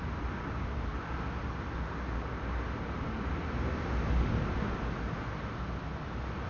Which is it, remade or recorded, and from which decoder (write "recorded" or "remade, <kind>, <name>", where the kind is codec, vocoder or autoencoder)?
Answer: recorded